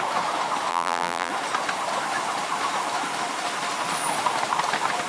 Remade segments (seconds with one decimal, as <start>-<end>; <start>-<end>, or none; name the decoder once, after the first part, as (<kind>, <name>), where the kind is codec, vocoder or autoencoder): 0.7-1.3 (vocoder, BigVGAN v2)